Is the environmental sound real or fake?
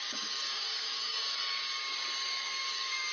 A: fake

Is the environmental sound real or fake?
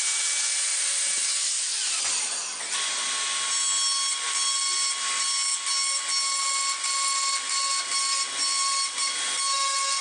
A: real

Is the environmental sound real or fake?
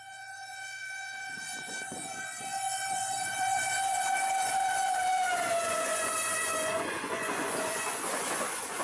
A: fake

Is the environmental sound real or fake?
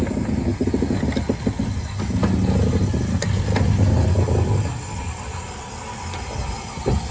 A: real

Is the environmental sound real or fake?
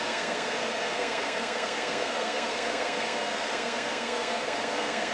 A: fake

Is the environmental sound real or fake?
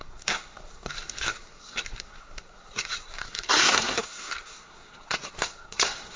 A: fake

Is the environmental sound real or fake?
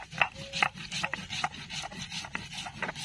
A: real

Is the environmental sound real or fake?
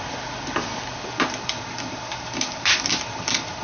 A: real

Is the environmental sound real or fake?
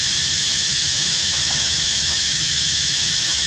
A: fake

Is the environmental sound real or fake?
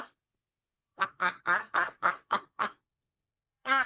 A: fake